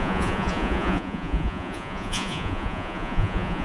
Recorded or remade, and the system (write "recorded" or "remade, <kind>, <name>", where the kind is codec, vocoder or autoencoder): remade, vocoder, Vocos